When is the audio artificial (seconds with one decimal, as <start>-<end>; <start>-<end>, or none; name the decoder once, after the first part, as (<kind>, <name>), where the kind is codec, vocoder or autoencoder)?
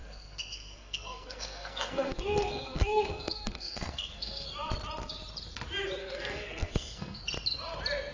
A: 0.0-4.5 (codec, SNAC); 6.0-7.2